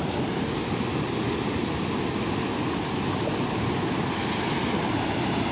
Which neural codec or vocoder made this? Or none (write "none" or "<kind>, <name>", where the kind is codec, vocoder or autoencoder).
none